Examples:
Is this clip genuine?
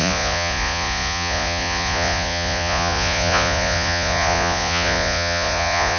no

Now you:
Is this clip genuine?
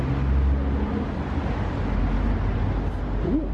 yes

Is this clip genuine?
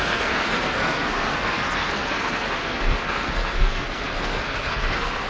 no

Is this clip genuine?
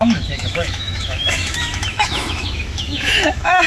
no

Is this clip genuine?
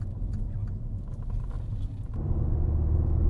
yes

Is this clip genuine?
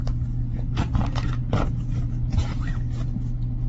yes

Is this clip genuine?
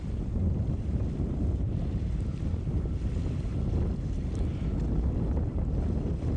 yes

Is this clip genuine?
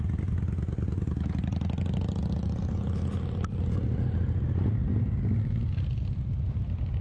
yes